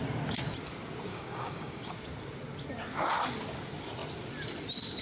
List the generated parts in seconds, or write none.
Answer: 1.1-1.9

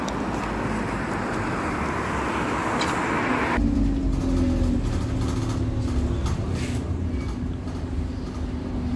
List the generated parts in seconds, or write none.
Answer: none

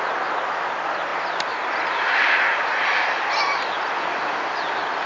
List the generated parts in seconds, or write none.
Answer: none

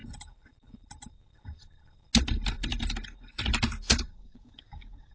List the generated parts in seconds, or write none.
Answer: 4.1-5.1

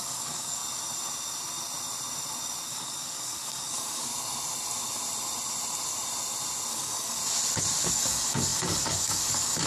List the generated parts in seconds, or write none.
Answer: 0.0-0.6; 2.7-4.1; 6.7-7.2; 7.9-9.7

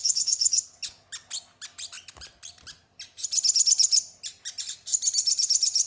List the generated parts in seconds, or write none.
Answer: 0.0-0.6